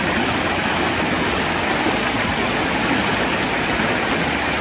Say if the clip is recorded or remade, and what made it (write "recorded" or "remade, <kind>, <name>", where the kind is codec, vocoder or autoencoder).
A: recorded